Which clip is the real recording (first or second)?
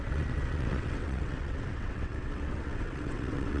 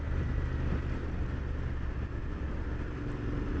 second